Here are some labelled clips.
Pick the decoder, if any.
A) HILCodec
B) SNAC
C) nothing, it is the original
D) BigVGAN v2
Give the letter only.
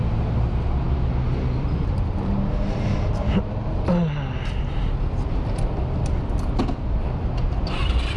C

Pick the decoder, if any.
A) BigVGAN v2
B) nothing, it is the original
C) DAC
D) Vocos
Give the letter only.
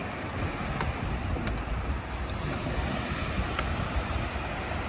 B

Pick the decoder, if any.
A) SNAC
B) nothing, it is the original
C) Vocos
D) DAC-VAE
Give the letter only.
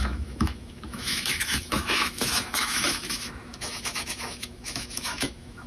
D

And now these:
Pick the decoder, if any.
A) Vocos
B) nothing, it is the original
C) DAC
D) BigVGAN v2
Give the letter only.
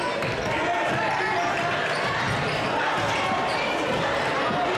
B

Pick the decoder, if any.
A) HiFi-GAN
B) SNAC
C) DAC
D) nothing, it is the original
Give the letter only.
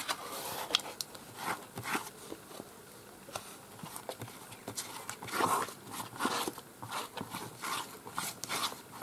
D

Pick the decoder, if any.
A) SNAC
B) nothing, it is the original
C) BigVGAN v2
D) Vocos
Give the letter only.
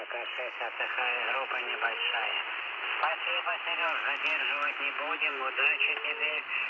B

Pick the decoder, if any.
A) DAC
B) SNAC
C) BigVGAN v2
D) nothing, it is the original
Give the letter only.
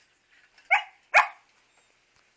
D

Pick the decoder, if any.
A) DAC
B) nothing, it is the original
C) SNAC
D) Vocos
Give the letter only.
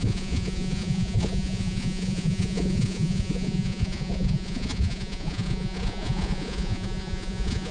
D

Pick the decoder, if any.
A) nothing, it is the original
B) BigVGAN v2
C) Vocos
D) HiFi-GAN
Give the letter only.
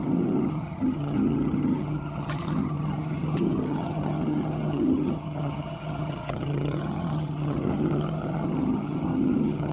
D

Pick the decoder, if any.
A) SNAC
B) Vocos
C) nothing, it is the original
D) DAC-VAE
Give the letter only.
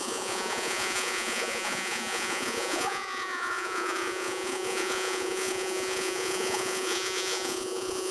B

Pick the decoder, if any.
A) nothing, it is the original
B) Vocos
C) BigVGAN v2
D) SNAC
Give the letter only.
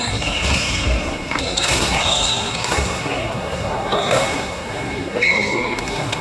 D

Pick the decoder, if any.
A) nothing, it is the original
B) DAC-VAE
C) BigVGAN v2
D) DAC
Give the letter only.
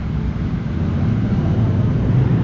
A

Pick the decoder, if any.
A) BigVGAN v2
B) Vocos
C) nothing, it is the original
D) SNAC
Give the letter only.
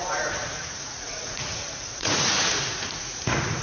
B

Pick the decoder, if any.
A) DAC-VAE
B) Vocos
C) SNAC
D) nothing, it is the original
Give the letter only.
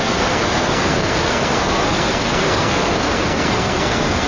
C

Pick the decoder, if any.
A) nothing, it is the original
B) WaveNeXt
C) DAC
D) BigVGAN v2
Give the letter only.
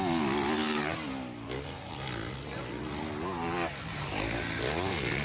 A